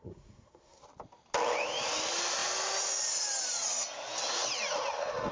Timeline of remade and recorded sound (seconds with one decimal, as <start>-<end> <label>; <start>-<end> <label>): 0.0-0.8 remade; 0.8-5.3 recorded